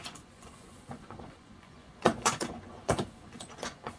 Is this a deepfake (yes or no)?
yes